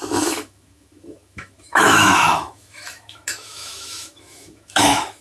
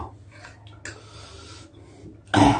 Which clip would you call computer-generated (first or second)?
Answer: first